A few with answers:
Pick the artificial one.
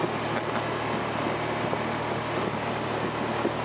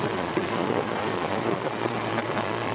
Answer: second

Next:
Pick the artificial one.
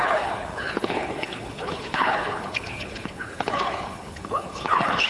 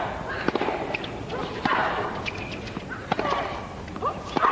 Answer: first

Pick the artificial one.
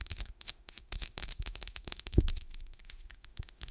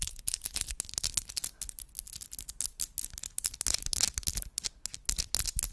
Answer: first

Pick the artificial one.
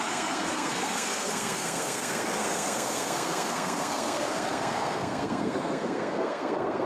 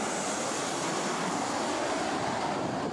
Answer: first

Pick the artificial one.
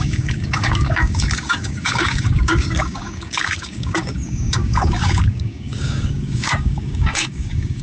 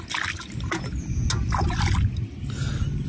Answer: first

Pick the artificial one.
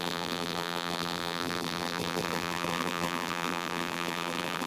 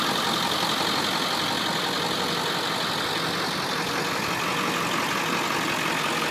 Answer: first